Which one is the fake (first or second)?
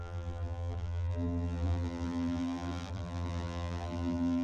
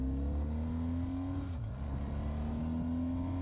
first